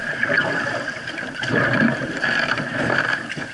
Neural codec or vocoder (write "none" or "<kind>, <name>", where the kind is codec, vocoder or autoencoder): vocoder, BigVGAN v2